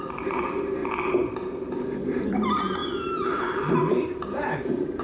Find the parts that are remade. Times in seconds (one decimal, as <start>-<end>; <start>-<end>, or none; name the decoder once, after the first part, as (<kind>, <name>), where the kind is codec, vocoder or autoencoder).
0.0-0.8 (vocoder, BigVGAN v2); 2.0-5.0